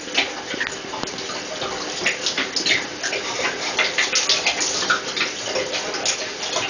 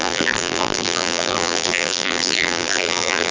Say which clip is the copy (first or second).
second